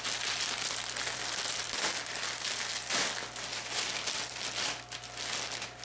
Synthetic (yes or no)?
no